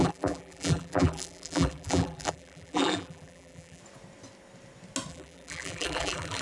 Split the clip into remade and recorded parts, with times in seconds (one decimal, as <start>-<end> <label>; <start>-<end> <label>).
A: 0.0-3.8 remade; 3.8-5.1 recorded; 5.1-6.4 remade